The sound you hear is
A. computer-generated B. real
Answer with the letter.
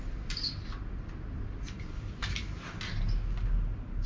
B